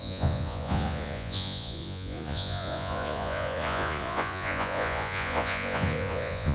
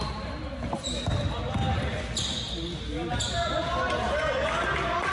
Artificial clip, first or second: first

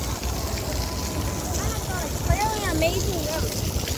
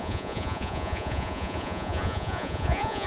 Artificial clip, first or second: second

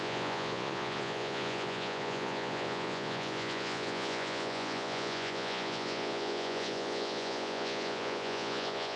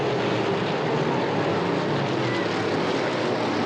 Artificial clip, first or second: first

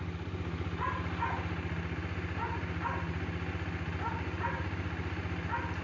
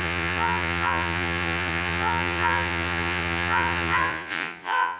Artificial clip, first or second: second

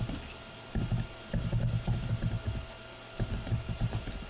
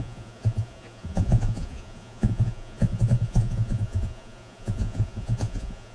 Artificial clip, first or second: second